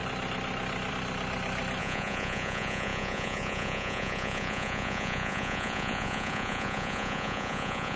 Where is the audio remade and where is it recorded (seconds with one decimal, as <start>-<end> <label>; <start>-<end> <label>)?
0.0-1.8 recorded; 1.8-8.0 remade